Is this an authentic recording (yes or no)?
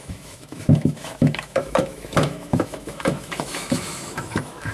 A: no